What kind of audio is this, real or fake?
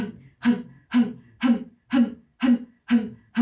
real